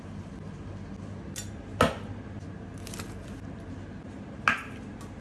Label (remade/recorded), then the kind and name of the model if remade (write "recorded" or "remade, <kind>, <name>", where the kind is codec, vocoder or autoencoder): recorded